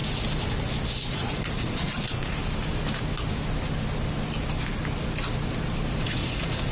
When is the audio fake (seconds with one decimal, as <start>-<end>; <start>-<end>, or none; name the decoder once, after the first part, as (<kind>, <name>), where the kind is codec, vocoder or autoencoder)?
1.1-2.4 (vocoder, Vocos); 6.0-6.7